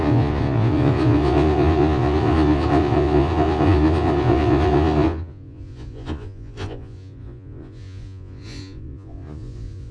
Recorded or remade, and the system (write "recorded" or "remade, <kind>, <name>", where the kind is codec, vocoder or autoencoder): remade, vocoder, Vocos